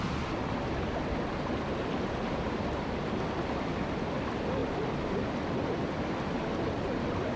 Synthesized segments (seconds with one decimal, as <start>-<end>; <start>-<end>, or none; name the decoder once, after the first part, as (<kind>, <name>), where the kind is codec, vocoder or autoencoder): none